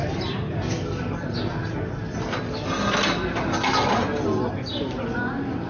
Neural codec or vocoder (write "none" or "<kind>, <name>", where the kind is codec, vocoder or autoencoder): none